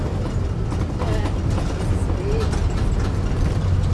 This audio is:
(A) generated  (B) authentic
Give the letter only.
B